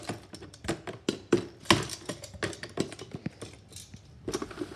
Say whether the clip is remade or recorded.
recorded